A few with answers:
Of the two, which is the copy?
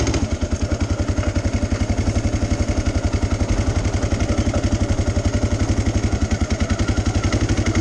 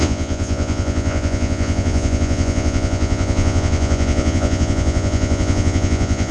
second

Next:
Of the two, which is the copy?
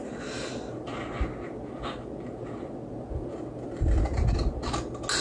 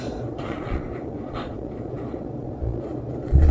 second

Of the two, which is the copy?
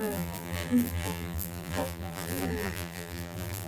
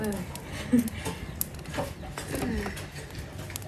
first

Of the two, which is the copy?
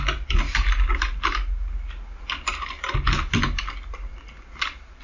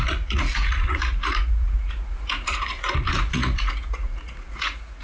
second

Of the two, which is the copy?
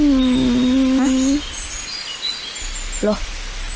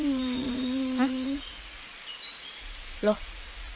second